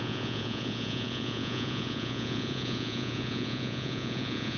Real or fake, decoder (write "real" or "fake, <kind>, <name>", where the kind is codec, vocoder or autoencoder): fake, vocoder, Vocos